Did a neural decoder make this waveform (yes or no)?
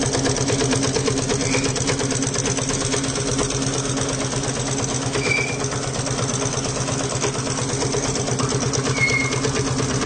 no